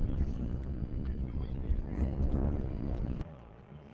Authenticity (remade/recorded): remade